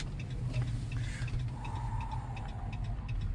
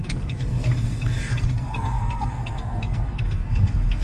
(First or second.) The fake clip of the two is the second